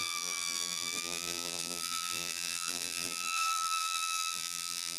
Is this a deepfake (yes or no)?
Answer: yes